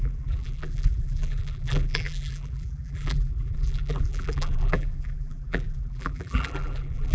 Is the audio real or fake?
fake